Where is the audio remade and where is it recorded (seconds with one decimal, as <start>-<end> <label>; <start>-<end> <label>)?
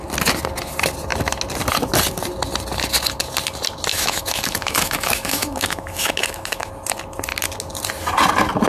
0.0-3.9 recorded; 3.9-6.7 remade; 6.7-8.7 recorded